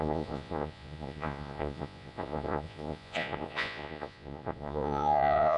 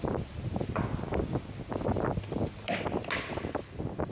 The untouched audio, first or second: second